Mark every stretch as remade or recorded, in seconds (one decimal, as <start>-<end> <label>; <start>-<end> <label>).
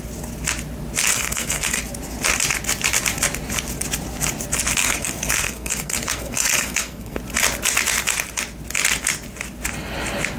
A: 0.0-1.1 recorded; 1.1-1.8 remade; 1.8-4.8 recorded; 4.8-7.2 remade; 7.2-10.4 recorded